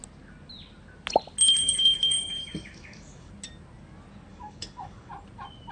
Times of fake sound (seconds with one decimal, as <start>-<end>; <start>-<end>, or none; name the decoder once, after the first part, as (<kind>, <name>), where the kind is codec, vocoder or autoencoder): 1.6-3.3 (codec, DAC); 4.3-5.1